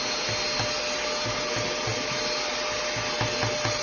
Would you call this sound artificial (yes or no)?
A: no